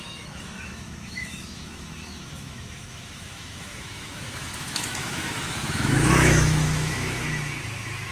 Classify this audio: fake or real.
fake